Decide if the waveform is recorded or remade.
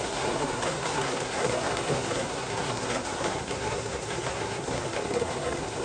remade